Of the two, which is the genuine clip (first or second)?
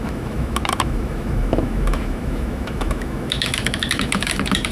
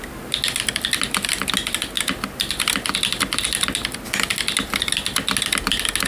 second